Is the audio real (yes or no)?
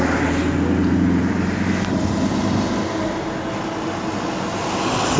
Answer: yes